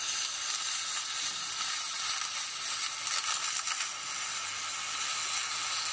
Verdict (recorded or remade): recorded